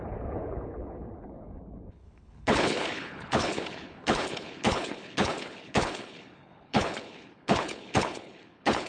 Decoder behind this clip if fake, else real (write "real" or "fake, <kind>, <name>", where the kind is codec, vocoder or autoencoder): fake, codec, HILCodec